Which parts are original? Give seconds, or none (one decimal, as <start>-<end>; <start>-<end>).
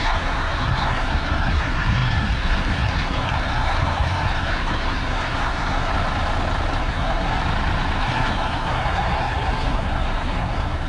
5.9-6.8; 7.4-8.0